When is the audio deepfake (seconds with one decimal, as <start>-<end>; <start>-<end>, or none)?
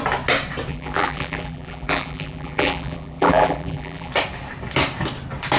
0.7-4.1